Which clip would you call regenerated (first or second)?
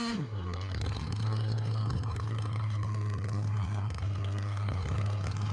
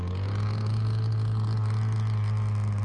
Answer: first